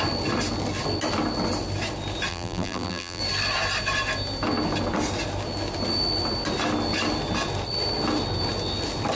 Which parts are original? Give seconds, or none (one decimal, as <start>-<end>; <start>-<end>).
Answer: 0.0-2.3; 3.2-9.1